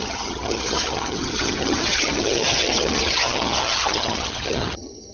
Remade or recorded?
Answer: remade